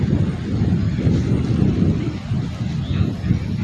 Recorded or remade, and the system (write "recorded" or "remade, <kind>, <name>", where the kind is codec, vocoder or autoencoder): recorded